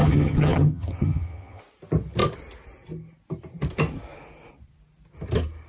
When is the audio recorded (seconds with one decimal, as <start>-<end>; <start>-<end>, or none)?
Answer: 1.6-5.7